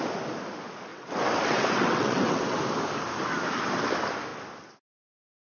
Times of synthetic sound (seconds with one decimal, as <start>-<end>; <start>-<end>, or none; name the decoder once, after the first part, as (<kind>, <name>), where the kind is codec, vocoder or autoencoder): 0.9-2.6 (vocoder, WaveNeXt)